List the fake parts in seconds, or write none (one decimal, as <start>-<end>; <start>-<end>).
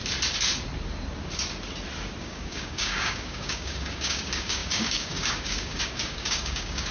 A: 2.2-6.9